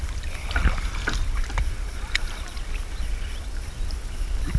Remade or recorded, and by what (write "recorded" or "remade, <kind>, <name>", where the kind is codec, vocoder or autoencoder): recorded